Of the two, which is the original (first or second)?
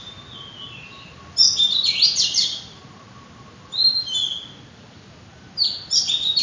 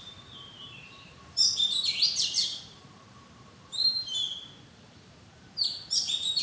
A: first